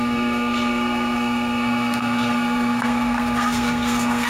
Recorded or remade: remade